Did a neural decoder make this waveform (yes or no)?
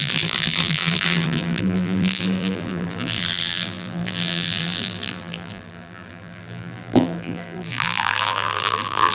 yes